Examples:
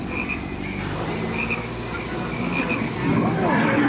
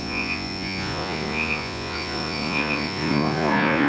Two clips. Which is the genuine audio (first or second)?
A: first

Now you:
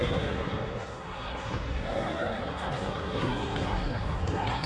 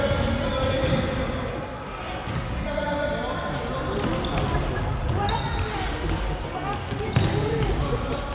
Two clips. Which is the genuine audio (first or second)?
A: second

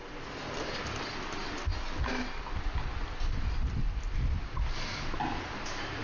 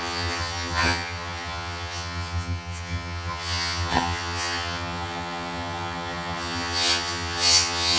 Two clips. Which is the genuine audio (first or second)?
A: first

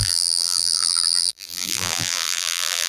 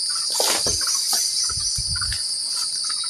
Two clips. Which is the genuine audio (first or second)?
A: second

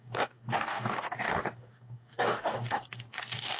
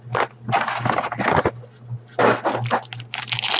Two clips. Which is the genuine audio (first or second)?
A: second